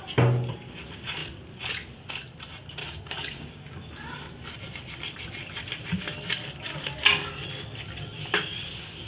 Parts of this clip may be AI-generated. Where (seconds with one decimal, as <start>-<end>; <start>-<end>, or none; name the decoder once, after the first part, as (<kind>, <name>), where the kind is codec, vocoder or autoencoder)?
2.8-3.9 (codec, DAC)